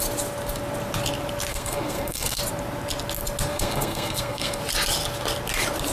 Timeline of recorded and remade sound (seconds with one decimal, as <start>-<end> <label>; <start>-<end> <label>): 0.0-1.5 recorded; 1.5-2.4 remade; 2.4-3.5 recorded; 3.5-4.6 remade; 4.6-5.9 recorded